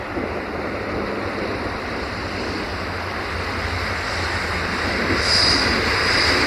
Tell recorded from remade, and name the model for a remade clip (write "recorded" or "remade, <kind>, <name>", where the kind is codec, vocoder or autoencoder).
recorded